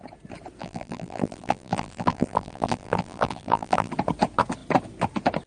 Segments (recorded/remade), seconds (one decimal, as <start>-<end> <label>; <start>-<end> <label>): 0.0-0.6 recorded; 0.6-3.9 remade; 3.9-5.5 recorded